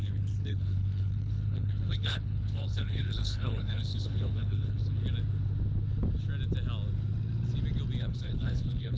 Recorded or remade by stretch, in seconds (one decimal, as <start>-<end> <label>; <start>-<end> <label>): 0.0-4.8 remade; 4.8-8.0 recorded; 8.0-9.0 remade